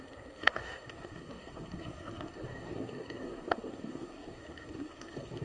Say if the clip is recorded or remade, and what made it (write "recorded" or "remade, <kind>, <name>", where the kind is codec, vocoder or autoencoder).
remade, codec, SNAC